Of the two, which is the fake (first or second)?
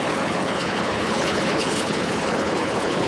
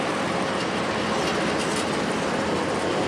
first